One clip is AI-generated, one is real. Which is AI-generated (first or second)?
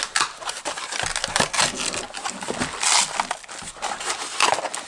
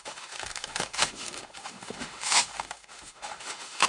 second